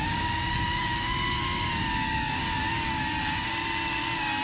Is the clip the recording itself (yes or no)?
no